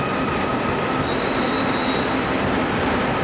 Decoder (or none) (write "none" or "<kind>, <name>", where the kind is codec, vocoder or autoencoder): none